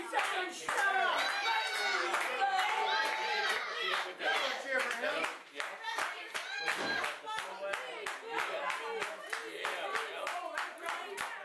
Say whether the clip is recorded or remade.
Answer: recorded